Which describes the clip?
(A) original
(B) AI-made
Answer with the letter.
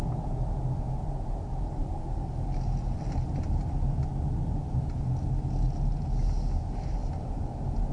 A